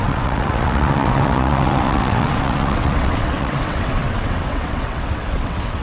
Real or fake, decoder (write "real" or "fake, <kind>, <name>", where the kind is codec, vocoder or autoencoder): fake, vocoder, WaveNeXt